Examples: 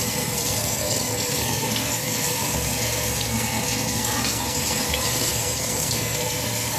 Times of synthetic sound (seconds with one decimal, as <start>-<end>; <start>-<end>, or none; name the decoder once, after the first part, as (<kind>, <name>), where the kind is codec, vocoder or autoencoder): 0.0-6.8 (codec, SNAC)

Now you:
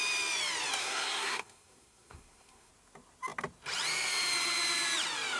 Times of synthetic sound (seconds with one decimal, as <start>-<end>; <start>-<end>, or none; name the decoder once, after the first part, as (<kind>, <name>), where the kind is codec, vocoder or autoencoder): 0.8-2.7 (codec, SNAC)

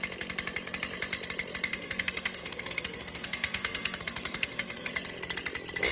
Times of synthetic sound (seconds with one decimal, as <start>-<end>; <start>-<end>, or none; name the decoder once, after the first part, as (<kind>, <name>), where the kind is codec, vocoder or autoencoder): 1.7-4.9 (codec, SNAC)

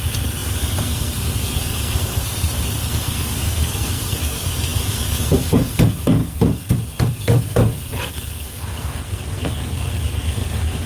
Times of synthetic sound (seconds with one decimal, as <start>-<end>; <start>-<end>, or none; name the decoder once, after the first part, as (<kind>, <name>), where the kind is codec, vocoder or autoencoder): 0.0-10.9 (codec, SNAC)

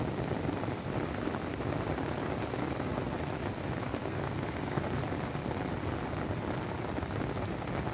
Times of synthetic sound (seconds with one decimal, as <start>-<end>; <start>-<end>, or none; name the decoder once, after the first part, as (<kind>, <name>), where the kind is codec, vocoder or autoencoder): 4.1-4.8 (codec, SNAC)

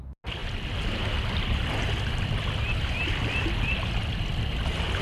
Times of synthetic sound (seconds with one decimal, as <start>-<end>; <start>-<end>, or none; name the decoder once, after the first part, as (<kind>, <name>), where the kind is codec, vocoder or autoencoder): none

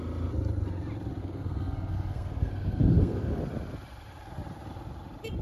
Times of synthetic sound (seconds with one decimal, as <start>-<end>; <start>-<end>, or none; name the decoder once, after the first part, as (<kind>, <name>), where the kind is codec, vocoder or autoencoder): 1.2-3.4 (codec, SNAC)